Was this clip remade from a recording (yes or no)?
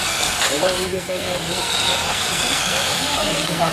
yes